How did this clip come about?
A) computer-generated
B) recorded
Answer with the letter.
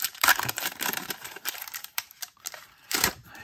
A